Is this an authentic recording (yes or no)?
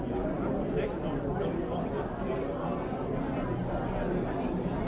yes